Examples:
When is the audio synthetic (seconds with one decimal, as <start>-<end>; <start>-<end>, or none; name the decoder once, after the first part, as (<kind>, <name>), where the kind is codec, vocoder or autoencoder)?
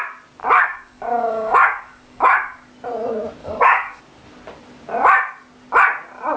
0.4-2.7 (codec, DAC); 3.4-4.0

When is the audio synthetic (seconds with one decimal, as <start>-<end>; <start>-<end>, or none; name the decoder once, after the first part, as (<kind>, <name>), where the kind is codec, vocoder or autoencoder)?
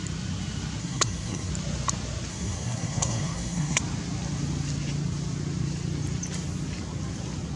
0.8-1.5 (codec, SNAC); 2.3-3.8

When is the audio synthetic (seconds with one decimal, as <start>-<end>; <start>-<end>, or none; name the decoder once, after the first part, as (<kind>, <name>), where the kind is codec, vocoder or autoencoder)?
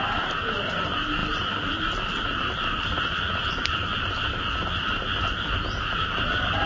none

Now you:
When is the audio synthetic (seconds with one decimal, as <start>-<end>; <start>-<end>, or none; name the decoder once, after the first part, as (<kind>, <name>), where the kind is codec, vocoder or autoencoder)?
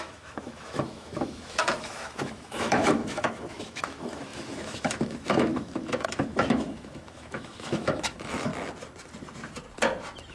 0.0-8.5 (autoencoder, DAC-VAE)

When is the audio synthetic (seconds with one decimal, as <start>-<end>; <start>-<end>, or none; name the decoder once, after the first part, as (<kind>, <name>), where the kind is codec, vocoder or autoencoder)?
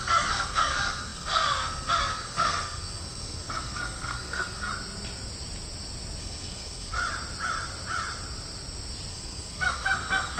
0.0-4.7 (codec, SNAC); 6.2-7.0; 9.1-10.4